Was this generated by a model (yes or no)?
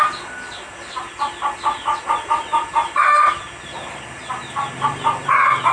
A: no